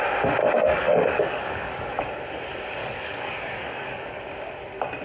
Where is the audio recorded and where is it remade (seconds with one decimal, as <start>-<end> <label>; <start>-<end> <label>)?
0.0-0.4 recorded; 0.4-2.1 remade; 2.1-2.8 recorded; 2.8-4.2 remade; 4.2-5.0 recorded

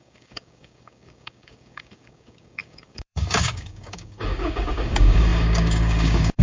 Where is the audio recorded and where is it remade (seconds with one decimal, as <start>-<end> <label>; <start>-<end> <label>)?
0.0-6.4 remade

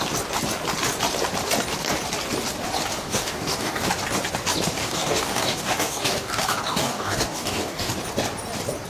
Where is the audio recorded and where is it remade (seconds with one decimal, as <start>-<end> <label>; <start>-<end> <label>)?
0.0-2.9 recorded; 2.9-3.9 remade; 3.9-4.8 recorded; 4.8-7.9 remade; 7.9-8.9 recorded

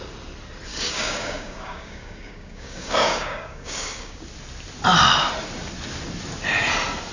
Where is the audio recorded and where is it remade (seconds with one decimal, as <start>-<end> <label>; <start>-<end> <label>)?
0.0-0.7 recorded; 0.7-4.2 remade; 4.2-7.1 recorded

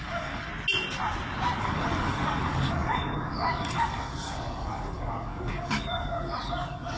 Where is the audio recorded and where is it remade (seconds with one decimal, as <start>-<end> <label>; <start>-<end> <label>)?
0.0-0.5 remade; 0.5-1.6 recorded; 1.6-7.0 remade

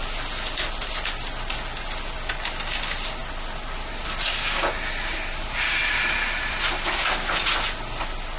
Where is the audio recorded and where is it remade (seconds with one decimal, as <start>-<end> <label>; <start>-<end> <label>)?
0.0-8.4 recorded

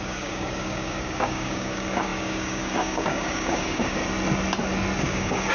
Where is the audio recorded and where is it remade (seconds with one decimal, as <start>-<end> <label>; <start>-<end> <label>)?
0.0-4.0 remade; 4.0-5.0 recorded; 5.0-5.5 remade

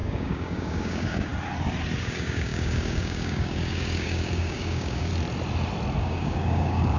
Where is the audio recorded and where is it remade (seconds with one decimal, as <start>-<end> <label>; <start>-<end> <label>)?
0.0-1.3 remade; 1.3-2.0 recorded; 2.0-5.1 remade; 5.1-6.0 recorded; 6.0-7.0 remade